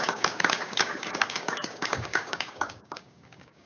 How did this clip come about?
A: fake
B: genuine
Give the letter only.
A